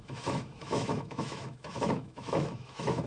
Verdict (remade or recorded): remade